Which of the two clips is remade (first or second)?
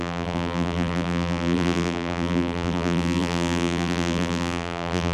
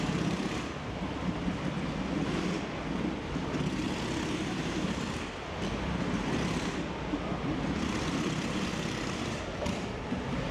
first